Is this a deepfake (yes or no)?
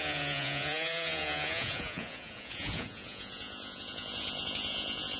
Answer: yes